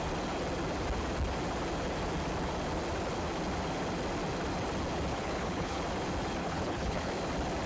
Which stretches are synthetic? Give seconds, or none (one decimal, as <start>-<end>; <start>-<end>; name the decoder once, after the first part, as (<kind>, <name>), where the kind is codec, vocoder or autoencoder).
5.1-5.8 (codec, HILCodec); 6.4-7.1